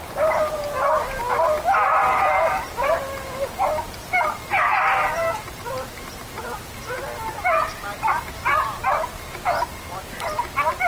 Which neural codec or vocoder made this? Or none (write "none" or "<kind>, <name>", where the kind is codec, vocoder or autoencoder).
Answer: none